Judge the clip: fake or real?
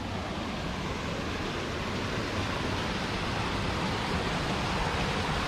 real